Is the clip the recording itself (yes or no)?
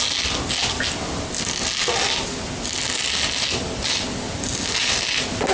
yes